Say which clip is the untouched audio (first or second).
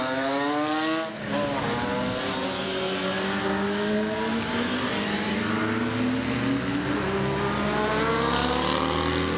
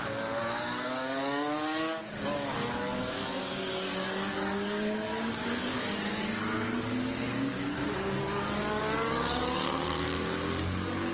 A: first